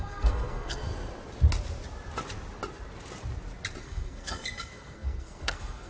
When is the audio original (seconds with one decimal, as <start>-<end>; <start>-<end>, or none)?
0.9-3.8